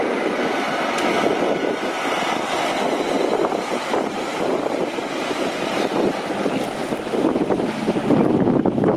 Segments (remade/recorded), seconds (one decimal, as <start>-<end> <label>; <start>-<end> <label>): 0.0-3.4 recorded; 3.4-5.5 remade; 5.5-9.0 recorded